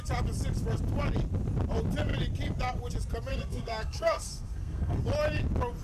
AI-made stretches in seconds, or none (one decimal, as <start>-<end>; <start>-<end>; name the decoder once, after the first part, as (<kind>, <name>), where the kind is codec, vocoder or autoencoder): 3.3-5.0 (codec, SNAC)